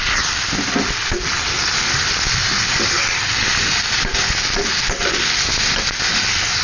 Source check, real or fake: real